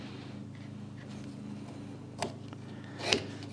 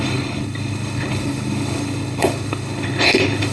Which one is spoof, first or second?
second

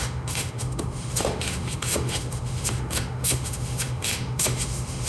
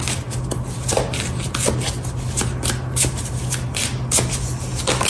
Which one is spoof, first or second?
first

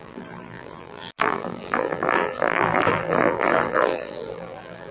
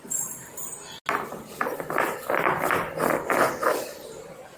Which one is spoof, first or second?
first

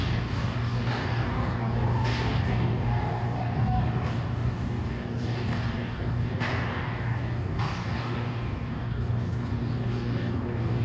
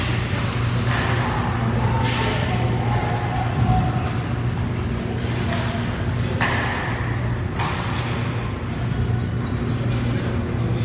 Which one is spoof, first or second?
first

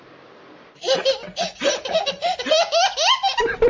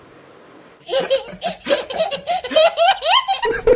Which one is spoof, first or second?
second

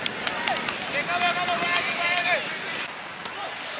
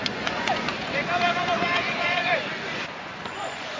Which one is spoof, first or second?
second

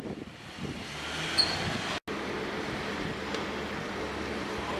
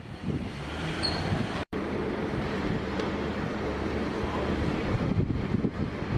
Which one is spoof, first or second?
second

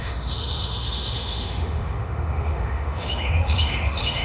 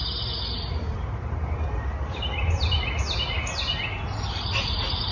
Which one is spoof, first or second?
first